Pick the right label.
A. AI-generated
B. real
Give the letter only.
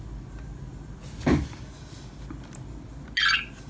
B